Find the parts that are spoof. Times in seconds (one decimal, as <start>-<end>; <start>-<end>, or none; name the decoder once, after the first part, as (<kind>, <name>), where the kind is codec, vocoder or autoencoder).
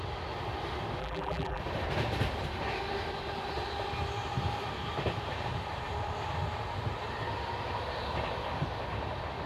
1.0-1.6 (vocoder, BigVGAN v2)